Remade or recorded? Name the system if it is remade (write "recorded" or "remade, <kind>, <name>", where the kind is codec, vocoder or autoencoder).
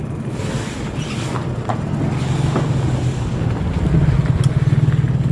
recorded